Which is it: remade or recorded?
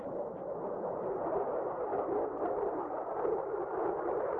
remade